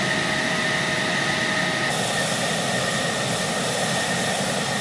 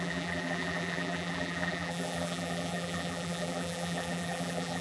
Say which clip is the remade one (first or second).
second